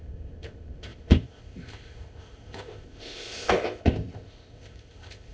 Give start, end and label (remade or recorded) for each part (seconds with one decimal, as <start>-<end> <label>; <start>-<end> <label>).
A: 0.0-5.3 remade